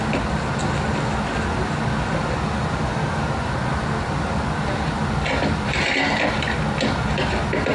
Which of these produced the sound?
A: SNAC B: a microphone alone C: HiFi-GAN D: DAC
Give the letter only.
B